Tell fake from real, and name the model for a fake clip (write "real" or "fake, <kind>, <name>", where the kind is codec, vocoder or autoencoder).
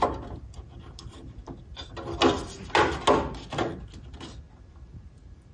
real